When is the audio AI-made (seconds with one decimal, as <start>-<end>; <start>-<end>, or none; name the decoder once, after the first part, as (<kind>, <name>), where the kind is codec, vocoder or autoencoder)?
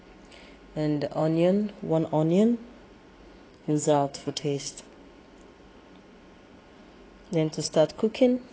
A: 3.5-4.8 (codec, SNAC)